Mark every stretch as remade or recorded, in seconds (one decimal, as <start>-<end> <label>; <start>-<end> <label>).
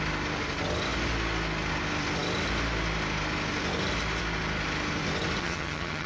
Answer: 0.0-5.4 recorded; 5.4-6.1 remade